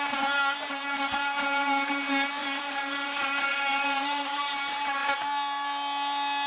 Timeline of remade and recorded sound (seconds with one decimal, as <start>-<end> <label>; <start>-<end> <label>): 0.0-5.0 remade; 5.0-6.5 recorded